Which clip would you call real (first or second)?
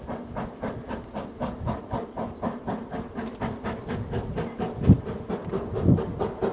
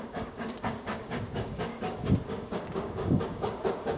first